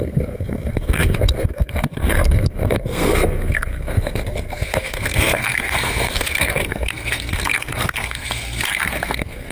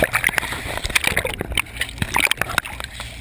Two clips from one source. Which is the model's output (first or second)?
first